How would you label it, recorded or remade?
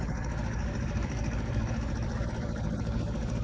remade